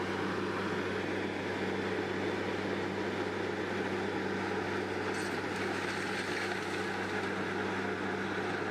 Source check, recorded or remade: recorded